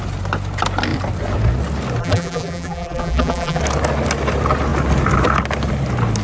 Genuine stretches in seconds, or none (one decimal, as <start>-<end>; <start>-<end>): 0.0-2.0; 3.6-6.2